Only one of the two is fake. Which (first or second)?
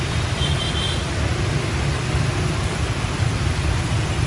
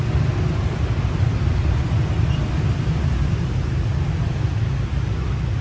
first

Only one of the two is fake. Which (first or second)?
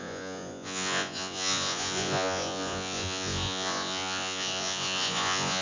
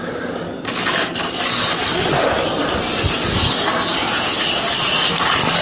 first